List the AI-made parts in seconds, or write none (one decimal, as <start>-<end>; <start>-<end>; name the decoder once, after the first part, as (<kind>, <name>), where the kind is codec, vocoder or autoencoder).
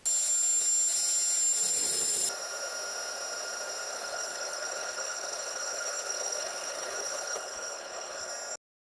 3.9-8.3 (codec, HILCodec)